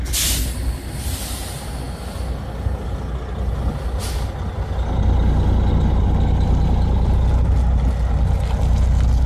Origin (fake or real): real